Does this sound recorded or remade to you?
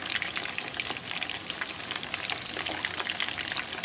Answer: recorded